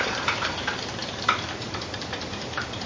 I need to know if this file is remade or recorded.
remade